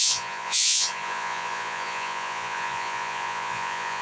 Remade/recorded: remade